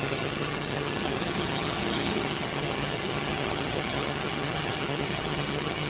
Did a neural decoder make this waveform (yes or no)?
yes